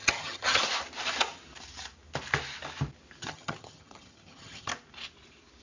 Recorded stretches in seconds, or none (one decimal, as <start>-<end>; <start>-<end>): 0.6-3.2; 4.7-5.6